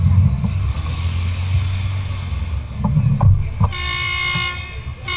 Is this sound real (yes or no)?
yes